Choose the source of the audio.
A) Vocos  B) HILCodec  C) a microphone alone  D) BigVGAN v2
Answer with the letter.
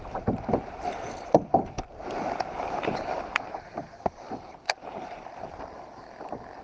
D